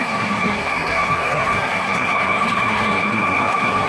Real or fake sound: fake